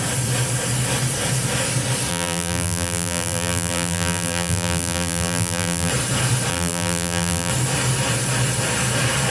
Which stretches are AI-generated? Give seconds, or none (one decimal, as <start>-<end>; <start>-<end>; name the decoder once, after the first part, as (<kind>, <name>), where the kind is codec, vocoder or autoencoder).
2.1-5.9 (vocoder, BigVGAN v2); 6.5-7.5